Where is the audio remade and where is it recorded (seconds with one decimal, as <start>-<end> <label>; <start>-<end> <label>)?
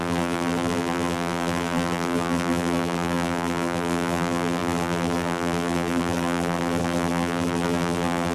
0.0-8.3 remade